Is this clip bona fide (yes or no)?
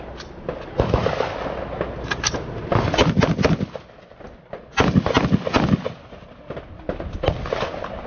yes